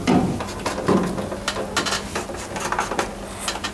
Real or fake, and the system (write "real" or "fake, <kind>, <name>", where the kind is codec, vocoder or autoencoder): real